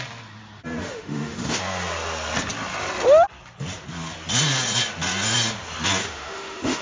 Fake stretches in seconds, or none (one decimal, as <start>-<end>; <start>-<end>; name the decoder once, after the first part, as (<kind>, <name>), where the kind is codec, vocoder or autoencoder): 0.8-1.6 (autoencoder, DAC-VAE); 6.0-6.8